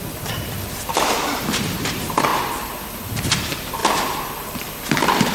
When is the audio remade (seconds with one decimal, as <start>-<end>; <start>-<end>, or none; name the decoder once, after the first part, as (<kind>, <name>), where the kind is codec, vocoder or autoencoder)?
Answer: 0.0-2.3 (vocoder, BigVGAN v2); 3.2-3.8